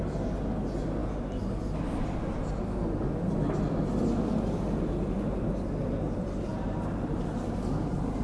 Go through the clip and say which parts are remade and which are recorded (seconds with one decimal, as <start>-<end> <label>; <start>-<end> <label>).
0.0-6.5 recorded; 6.5-8.2 remade